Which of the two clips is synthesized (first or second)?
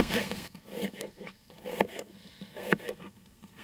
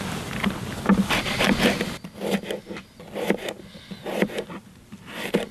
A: first